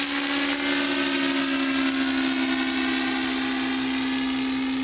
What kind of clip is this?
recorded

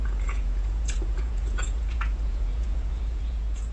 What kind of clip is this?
remade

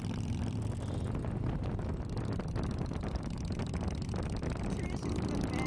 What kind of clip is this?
recorded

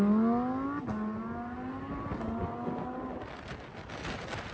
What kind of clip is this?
recorded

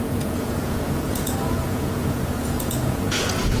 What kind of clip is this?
remade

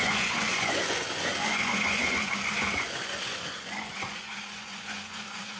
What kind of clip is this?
remade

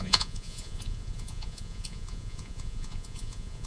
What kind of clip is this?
remade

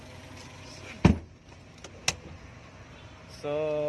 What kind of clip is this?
recorded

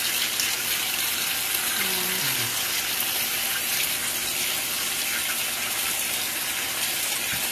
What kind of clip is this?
recorded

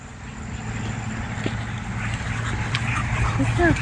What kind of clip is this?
recorded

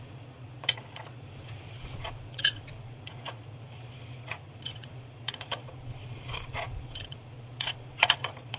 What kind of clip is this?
remade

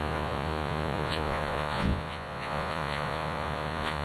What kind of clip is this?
remade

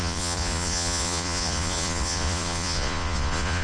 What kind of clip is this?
remade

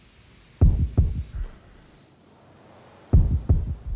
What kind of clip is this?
recorded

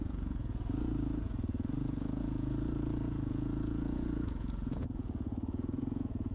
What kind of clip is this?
remade